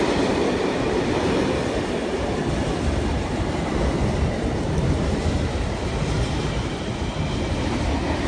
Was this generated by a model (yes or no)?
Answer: no